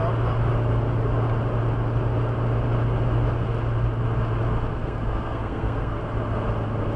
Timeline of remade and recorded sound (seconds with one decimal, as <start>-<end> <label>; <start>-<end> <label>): 0.0-4.7 recorded; 4.7-6.0 remade; 6.0-7.0 recorded

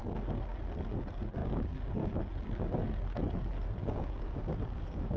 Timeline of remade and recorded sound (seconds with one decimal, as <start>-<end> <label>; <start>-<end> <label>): 0.0-1.4 recorded; 1.4-2.3 remade; 2.3-3.8 recorded; 3.8-5.2 remade